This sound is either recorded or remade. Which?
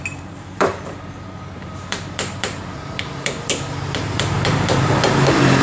remade